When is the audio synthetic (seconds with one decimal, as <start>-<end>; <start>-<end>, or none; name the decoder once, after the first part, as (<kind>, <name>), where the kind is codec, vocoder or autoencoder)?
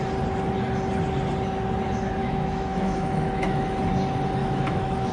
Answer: 2.2-3.8 (autoencoder, DAC-VAE); 4.4-5.1